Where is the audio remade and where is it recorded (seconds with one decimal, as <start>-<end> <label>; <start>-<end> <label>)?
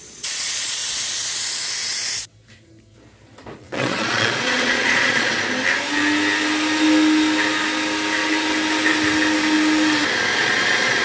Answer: 0.0-0.8 remade; 0.8-3.6 recorded; 3.6-5.3 remade; 5.3-10.4 recorded; 10.4-11.0 remade